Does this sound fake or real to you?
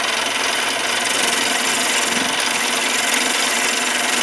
real